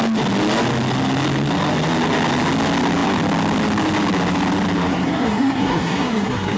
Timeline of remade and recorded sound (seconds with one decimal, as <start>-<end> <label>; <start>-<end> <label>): 0.0-4.9 recorded; 4.9-6.6 remade